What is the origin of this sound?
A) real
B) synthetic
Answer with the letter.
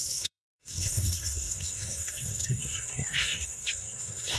B